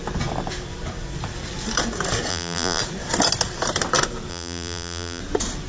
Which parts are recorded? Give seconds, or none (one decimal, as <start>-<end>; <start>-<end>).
0.0-2.3; 2.8-4.3; 5.2-5.7